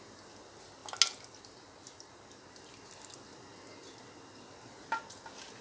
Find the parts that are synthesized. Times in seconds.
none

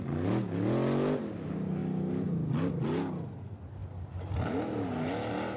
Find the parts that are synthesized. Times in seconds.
none

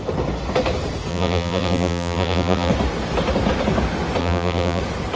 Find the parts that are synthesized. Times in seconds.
1.1-2.7 (vocoder, BigVGAN v2); 4.2-4.8